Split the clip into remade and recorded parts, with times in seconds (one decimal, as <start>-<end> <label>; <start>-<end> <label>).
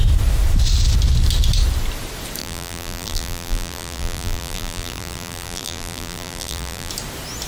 0.0-2.4 recorded; 2.4-6.9 remade; 6.9-7.5 recorded